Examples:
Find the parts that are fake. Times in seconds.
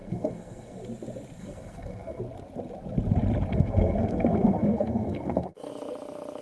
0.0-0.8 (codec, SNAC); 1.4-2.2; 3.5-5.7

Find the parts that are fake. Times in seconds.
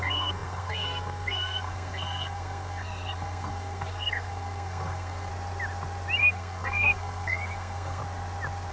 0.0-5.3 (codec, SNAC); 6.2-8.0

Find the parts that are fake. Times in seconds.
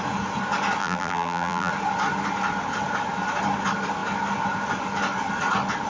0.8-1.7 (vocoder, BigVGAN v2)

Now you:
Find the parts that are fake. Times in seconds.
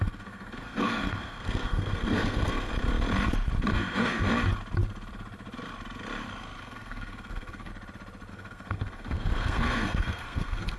0.0-2.7 (codec, SNAC); 3.7-4.3; 6.6-7.7; 8.3-10.8